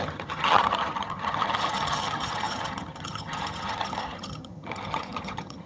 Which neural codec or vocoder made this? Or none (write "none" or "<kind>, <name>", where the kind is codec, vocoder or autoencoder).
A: vocoder, HiFi-GAN